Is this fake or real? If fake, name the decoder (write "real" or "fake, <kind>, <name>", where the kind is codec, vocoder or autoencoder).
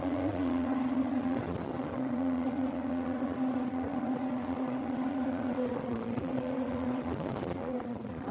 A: fake, vocoder, Vocos